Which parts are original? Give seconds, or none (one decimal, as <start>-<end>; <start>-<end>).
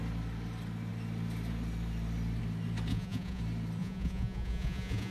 0.0-2.9; 3.4-3.8